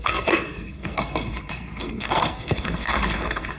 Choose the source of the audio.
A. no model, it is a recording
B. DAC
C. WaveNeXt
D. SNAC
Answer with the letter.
D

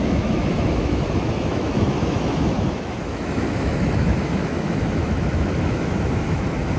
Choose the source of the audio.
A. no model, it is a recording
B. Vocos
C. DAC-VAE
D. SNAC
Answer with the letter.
C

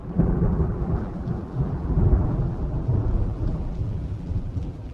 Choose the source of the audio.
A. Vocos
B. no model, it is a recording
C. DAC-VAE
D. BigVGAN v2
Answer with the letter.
D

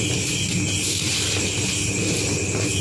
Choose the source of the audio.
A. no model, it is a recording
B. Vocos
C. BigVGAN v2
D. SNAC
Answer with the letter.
A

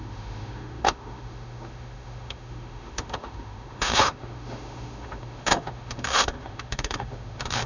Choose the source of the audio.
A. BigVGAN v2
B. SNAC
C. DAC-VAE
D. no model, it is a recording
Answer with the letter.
C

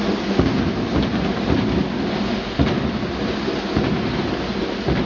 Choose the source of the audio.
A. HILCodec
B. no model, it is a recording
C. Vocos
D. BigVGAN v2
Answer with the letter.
B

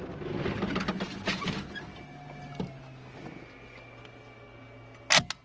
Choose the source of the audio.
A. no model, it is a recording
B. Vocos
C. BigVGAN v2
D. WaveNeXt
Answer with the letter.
A